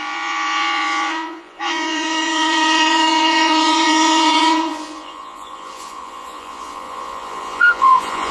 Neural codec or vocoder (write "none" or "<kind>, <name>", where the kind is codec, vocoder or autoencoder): vocoder, Vocos